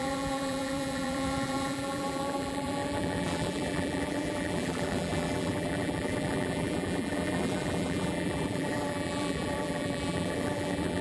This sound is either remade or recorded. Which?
remade